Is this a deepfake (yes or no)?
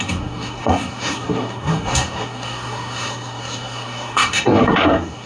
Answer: yes